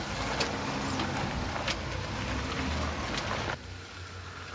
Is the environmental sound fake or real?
real